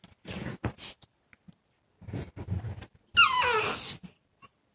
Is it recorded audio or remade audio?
recorded